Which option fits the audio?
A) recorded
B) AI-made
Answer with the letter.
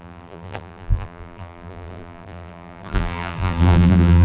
B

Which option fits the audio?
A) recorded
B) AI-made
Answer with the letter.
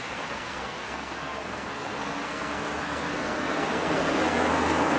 B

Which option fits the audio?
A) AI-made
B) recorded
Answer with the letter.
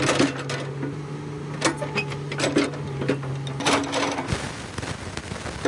B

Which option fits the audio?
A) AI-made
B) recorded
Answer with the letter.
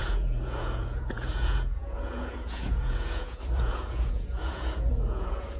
A